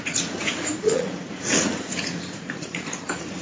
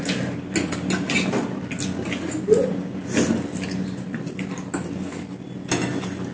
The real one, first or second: second